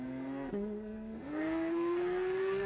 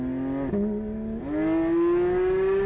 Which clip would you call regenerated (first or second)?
first